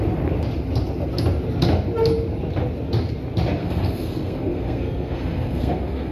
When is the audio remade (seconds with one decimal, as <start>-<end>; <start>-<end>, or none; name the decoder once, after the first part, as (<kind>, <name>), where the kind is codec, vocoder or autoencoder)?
3.6-6.1 (codec, SNAC)